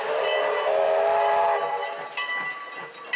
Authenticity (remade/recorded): recorded